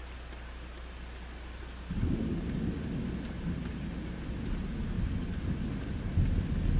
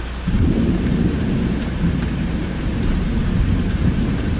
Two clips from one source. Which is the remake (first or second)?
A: second